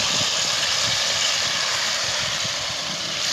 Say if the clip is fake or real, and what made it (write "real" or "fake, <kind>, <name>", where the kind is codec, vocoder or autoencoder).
fake, vocoder, BigVGAN v2